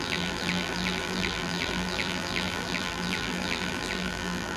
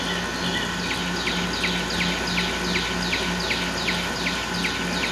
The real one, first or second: second